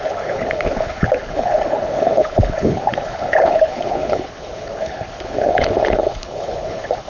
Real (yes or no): no